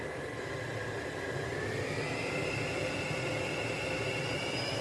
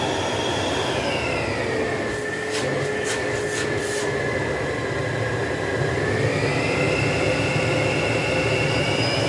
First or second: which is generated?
first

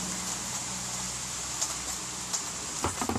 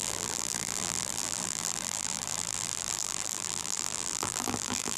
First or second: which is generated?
second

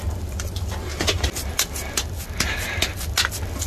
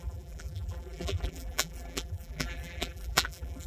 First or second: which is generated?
second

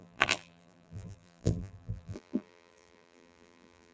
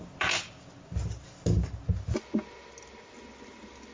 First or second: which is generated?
first